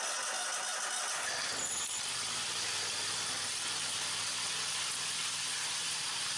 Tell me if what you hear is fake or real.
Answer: real